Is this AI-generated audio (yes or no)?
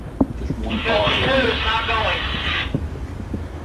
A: yes